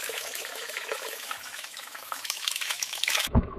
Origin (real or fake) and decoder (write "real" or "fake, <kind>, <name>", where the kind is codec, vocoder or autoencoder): fake, autoencoder, DAC-VAE